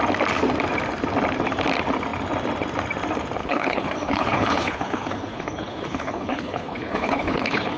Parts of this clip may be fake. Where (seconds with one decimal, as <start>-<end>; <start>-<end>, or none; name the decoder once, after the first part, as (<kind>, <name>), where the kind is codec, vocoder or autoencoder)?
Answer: 3.4-7.8 (codec, HILCodec)